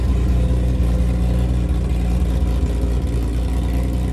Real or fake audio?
real